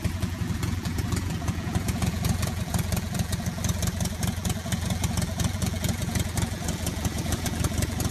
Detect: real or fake fake